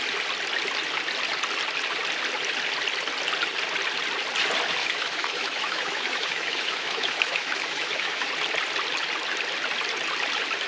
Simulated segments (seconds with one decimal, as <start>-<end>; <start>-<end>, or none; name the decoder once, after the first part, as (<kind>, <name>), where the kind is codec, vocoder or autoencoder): 4.8-8.3 (autoencoder, DAC-VAE)